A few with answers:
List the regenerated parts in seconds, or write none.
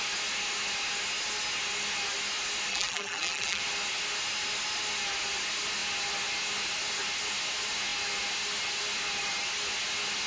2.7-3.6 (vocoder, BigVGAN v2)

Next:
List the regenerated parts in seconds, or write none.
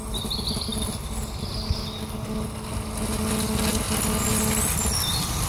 none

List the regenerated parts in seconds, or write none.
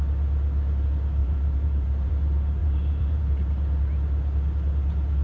1.2-2.1 (vocoder, BigVGAN v2); 2.6-3.2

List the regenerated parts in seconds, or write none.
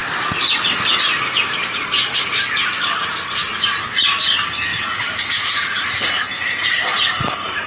0.0-3.5 (vocoder, BigVGAN v2); 4.0-7.7